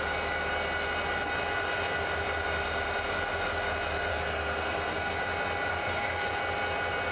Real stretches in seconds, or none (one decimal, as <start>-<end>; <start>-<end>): 0.0-4.1; 5.1-5.7; 6.3-7.1